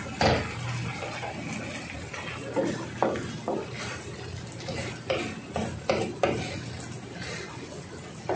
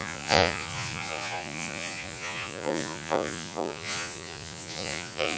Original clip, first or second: first